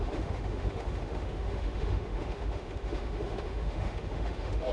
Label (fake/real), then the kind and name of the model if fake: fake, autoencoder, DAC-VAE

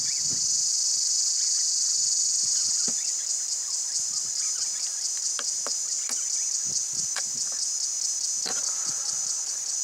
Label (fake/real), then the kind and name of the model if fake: real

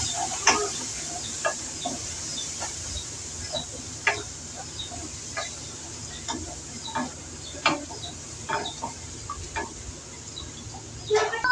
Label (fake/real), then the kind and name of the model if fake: real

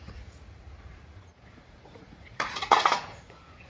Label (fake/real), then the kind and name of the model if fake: fake, vocoder, Vocos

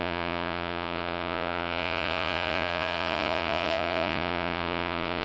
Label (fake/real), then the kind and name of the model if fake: fake, vocoder, Vocos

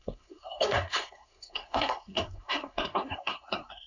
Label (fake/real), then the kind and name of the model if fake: fake, codec, SNAC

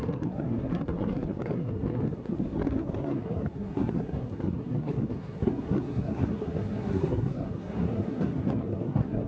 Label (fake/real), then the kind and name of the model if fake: fake, codec, SNAC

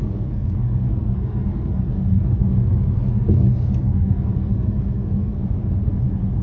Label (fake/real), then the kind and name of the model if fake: fake, codec, SNAC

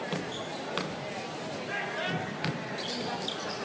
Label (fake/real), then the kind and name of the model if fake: real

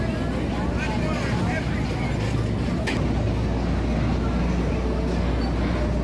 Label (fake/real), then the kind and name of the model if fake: real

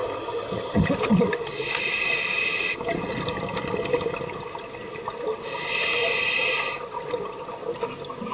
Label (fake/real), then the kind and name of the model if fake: real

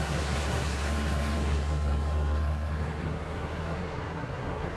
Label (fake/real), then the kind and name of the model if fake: fake, codec, SNAC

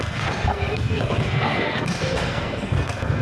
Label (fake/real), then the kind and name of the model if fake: fake, codec, SNAC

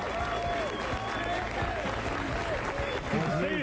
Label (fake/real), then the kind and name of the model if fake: real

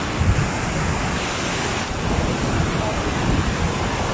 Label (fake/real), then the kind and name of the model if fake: real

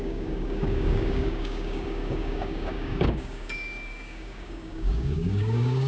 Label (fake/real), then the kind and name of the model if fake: fake, codec, DAC